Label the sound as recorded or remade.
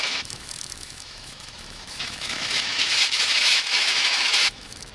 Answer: remade